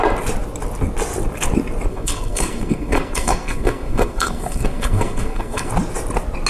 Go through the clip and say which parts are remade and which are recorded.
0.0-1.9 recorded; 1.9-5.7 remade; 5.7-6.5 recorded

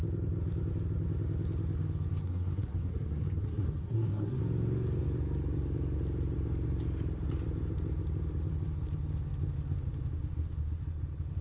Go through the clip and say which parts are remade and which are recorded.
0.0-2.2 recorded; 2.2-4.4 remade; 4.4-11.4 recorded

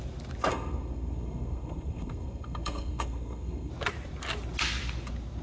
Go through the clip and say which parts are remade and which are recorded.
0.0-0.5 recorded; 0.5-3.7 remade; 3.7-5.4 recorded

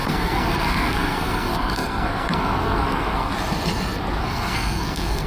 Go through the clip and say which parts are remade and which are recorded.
0.0-3.3 remade; 3.3-4.2 recorded; 4.2-5.3 remade